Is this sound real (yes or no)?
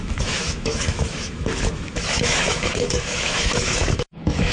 no